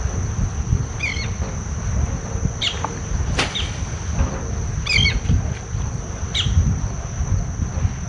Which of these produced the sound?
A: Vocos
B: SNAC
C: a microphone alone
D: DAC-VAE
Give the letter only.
C